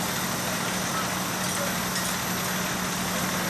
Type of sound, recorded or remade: recorded